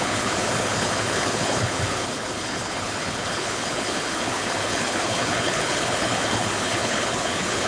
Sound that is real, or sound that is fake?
fake